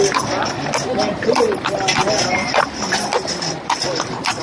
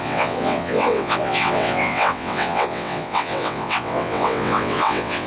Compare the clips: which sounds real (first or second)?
first